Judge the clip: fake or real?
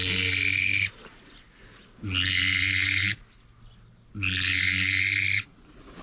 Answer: real